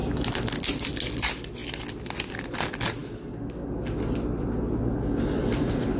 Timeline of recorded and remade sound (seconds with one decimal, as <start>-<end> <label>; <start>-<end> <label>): 0.0-6.0 recorded